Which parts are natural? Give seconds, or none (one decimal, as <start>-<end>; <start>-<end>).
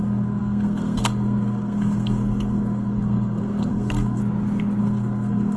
4.2-4.8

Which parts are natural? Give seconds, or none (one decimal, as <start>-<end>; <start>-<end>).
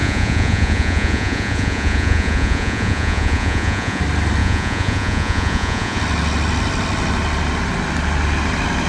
4.0-4.4; 6.0-8.9